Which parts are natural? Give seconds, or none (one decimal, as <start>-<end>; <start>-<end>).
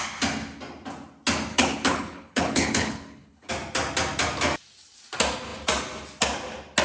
0.0-1.5; 3.5-6.8